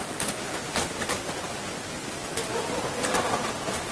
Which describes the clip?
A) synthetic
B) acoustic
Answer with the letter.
B